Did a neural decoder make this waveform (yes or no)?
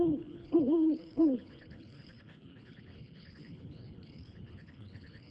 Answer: yes